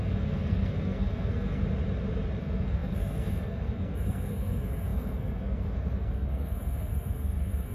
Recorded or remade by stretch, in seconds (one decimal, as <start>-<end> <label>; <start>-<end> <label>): 0.0-1.6 remade; 1.6-2.4 recorded; 2.4-7.7 remade